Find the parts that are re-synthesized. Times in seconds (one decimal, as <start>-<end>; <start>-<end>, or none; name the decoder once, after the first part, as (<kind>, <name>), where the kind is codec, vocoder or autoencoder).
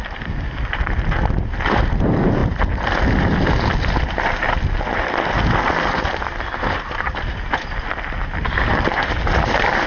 none